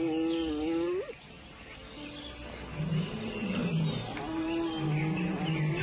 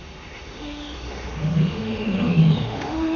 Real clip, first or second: first